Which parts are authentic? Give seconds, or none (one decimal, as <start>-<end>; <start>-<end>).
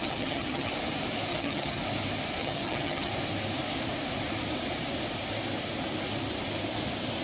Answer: 0.7-1.3; 1.8-2.4; 3.1-7.2